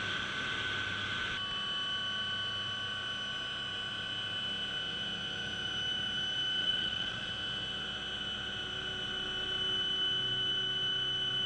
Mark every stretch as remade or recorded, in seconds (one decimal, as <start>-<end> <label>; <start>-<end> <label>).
0.0-6.6 recorded; 6.6-7.3 remade; 7.3-11.5 recorded